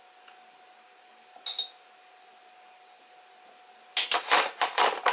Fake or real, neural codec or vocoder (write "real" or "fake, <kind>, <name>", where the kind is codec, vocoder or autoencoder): real